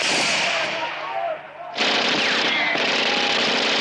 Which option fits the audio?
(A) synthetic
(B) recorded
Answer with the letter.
B